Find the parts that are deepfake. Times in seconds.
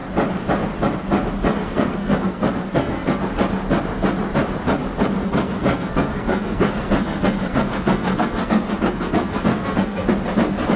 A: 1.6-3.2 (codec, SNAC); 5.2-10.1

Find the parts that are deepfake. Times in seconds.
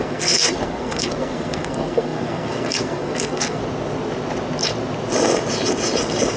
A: 0.0-3.6 (codec, SNAC)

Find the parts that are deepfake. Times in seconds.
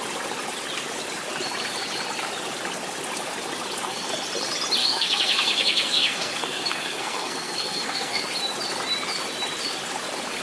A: 4.8-8.2 (codec, SNAC)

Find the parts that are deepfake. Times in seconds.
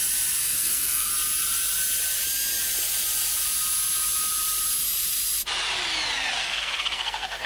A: 0.4-1.1 (codec, SNAC); 6.4-7.5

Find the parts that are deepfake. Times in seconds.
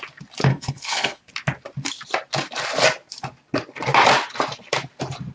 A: 0.5-1.2 (codec, SNAC)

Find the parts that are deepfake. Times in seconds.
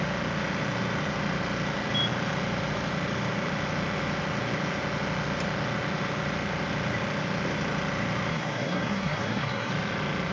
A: 8.3-9.7 (codec, SNAC)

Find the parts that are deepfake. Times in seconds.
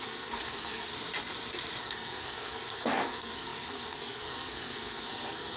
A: 0.0-0.9 (codec, SNAC); 1.8-5.6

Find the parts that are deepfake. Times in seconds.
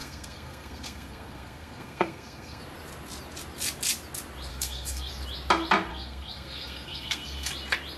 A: 0.0-2.6 (codec, SNAC); 4.5-5.1; 5.9-7.5